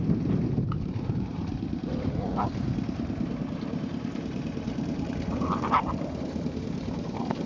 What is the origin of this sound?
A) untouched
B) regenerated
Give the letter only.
B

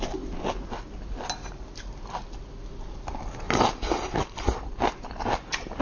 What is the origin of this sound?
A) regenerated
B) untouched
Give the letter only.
B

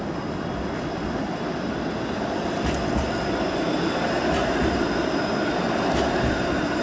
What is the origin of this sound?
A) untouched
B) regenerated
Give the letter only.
A